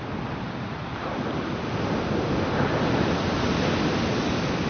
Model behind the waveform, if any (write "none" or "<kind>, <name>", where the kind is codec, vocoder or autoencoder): none